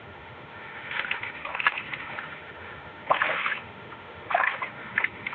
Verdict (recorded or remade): remade